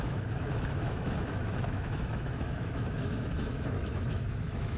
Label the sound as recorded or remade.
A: remade